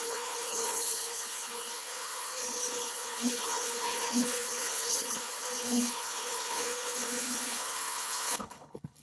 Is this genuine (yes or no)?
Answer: no